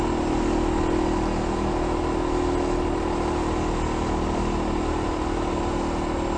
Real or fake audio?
real